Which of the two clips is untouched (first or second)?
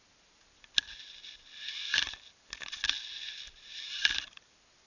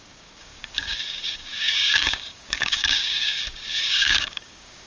first